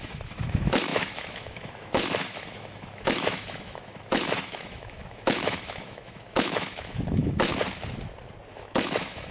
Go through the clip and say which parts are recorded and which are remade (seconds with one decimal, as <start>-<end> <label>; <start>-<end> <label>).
0.0-7.5 remade; 7.5-8.5 recorded; 8.5-9.3 remade